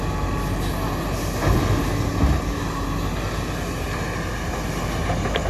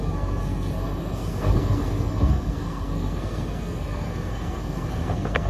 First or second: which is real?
first